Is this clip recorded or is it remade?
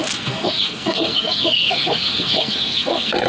remade